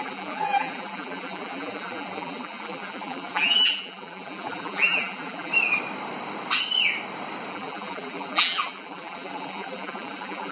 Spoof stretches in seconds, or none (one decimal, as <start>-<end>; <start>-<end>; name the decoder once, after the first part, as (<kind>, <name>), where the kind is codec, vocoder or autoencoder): 0.0-5.5 (vocoder, BigVGAN v2); 7.5-10.5